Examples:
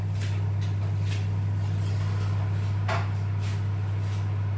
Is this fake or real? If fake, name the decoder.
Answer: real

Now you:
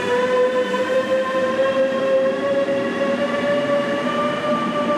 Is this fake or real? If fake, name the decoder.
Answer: fake, vocoder, BigVGAN v2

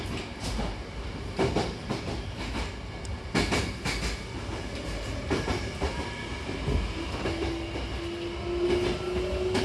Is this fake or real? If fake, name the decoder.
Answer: real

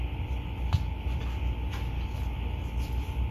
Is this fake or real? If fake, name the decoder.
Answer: real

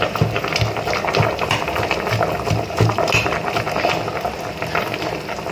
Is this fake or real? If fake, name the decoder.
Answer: real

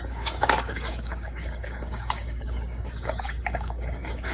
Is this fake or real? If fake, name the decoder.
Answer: fake, codec, DAC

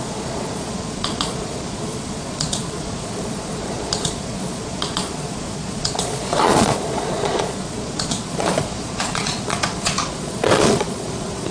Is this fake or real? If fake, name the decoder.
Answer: fake, vocoder, Vocos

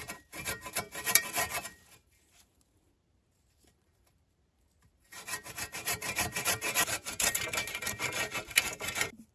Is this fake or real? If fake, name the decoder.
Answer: fake, vocoder, BigVGAN v2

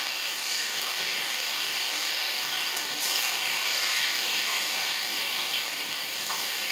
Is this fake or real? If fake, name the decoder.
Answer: fake, codec, DAC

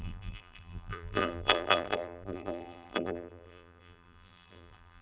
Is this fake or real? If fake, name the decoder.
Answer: fake, vocoder, BigVGAN v2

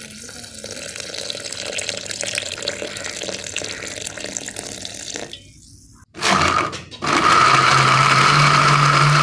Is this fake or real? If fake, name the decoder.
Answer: real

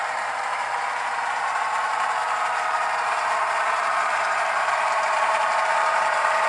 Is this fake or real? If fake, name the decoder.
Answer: fake, vocoder, BigVGAN v2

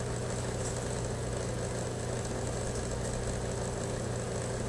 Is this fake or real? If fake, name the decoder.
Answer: real